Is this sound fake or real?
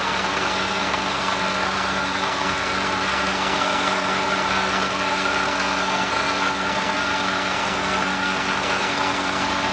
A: fake